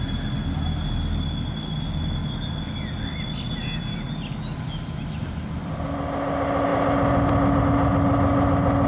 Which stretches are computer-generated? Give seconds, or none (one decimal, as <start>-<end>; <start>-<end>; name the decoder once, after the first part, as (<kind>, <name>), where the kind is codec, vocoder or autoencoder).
none